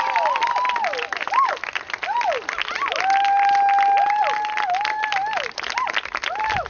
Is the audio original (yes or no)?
yes